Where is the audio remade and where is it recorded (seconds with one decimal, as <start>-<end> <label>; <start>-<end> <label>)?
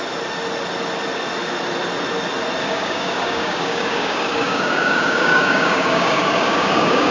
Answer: 0.0-2.6 recorded; 2.6-7.1 remade